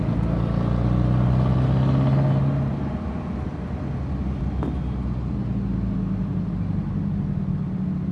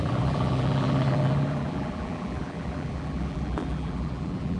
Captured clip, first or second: first